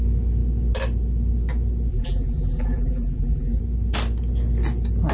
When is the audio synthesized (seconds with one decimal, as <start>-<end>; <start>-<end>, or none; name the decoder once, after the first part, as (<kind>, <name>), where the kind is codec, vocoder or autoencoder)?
1.9-3.6 (vocoder, BigVGAN v2)